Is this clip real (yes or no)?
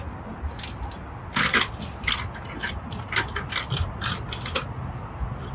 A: yes